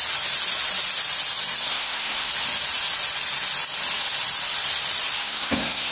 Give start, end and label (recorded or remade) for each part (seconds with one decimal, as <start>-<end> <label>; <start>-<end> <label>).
0.0-1.7 recorded; 1.7-2.3 remade; 2.3-5.2 recorded; 5.2-5.9 remade